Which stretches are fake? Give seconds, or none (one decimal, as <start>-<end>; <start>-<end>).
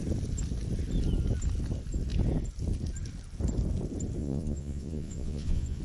4.2-5.8